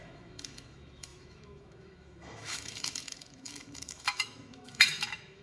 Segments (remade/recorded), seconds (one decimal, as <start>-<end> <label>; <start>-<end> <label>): 0.0-5.4 remade

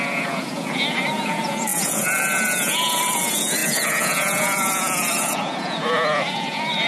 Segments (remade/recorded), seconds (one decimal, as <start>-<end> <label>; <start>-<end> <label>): 0.0-6.9 remade

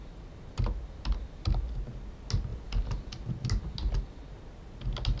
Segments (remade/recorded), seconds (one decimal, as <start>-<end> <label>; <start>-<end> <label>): 0.0-5.2 recorded

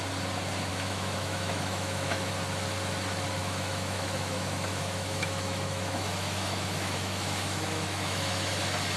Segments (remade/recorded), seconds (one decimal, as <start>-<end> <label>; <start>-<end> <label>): 0.0-0.7 recorded; 0.7-2.3 remade; 2.3-3.4 recorded; 3.4-8.5 remade; 8.5-9.0 recorded

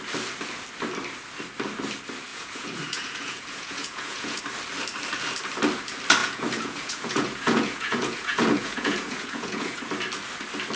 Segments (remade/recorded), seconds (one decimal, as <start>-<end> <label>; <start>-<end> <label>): 0.0-2.3 recorded; 2.3-4.4 remade; 4.4-6.2 recorded; 6.2-9.8 remade; 9.8-10.8 recorded

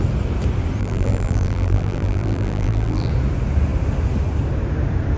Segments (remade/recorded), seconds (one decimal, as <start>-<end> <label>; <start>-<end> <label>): 0.0-0.8 recorded; 0.8-3.1 remade; 3.1-5.2 recorded

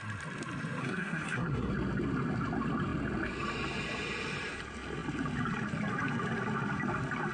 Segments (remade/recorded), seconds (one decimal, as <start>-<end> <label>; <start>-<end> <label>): 0.0-0.8 recorded; 0.8-1.7 remade; 1.7-7.3 recorded

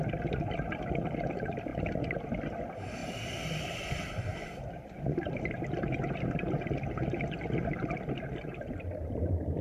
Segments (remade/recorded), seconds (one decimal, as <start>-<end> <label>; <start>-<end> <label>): 0.0-1.7 recorded; 1.7-2.2 remade; 2.2-3.0 recorded; 3.0-7.2 remade; 7.2-9.6 recorded